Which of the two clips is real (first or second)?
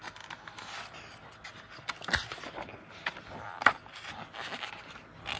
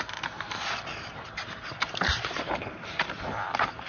first